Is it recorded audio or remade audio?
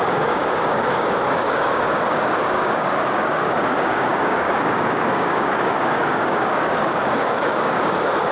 remade